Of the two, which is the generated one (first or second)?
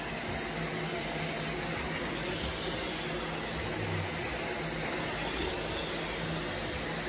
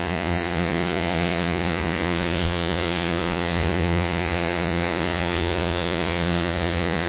second